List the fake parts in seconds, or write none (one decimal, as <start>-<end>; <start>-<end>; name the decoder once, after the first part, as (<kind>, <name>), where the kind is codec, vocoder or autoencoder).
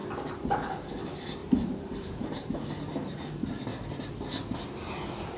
0.9-3.7 (vocoder, BigVGAN v2)